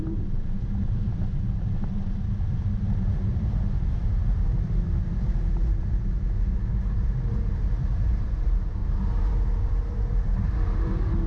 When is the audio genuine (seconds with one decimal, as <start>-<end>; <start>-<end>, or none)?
8.8-9.7